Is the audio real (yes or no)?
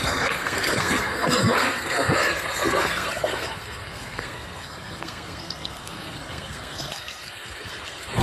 no